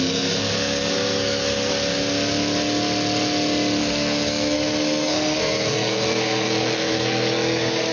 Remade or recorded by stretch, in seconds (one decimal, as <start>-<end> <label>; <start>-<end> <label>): 0.0-1.7 remade; 1.7-3.8 recorded; 3.8-7.9 remade